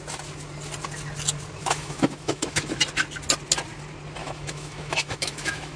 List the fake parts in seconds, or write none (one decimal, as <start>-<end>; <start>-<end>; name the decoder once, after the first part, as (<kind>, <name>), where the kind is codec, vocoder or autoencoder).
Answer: 1.6-2.8 (autoencoder, DAC-VAE); 4.2-5.8